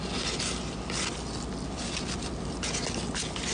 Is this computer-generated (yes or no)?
no